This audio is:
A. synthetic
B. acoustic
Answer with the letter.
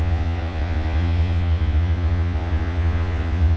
A